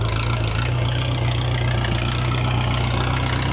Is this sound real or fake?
real